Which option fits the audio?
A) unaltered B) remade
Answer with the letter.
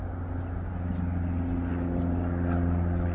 A